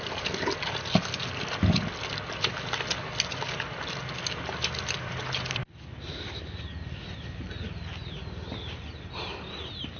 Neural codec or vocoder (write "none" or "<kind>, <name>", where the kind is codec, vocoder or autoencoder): none